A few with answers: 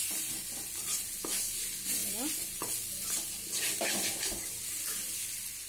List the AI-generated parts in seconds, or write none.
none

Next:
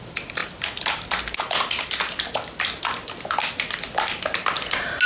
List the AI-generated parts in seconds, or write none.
none

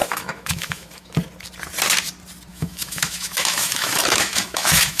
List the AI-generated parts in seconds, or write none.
0.0-1.1 (autoencoder, DAC-VAE); 2.5-5.0

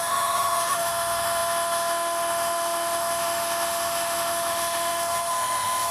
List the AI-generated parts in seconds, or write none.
0.0-5.9 (autoencoder, DAC-VAE)

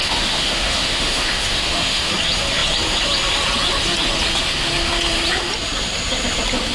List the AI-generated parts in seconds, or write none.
0.0-2.1 (autoencoder, DAC-VAE)

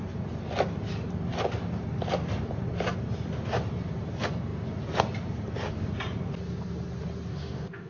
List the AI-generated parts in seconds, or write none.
7.3-7.9 (autoencoder, DAC-VAE)